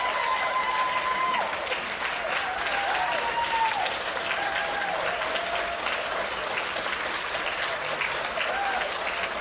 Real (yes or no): yes